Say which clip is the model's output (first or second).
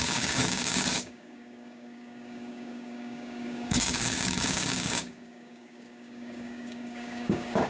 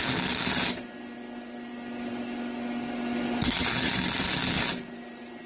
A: first